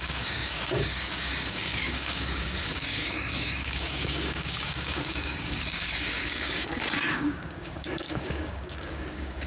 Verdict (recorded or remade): remade